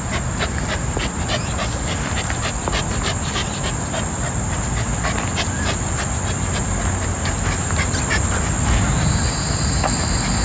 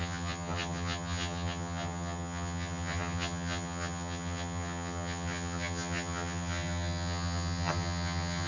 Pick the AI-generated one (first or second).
second